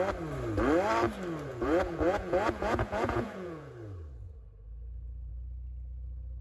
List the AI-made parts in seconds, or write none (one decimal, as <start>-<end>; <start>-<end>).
1.5-3.7

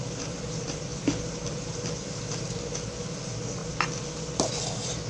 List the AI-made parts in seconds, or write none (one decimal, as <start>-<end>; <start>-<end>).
0.0-3.6; 4.5-5.1

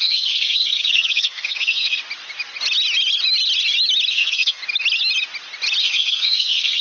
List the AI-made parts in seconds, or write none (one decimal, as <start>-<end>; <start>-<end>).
0.0-2.0; 4.1-4.6; 5.8-6.8

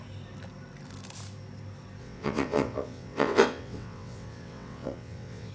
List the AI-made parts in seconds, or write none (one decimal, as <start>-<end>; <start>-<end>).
2.0-5.5

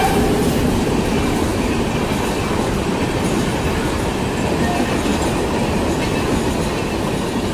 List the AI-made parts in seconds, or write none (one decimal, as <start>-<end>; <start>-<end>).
0.0-5.1; 6.5-7.5

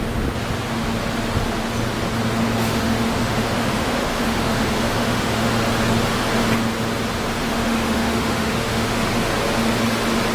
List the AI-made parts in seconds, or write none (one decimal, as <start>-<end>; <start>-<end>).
2.6-5.5; 7.5-9.1

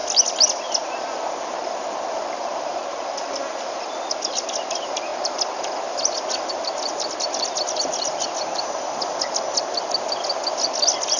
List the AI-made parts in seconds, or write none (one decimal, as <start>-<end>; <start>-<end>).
none

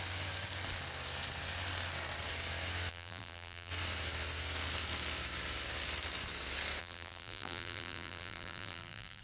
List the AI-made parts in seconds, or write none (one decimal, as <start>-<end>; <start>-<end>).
2.9-3.7; 6.8-9.2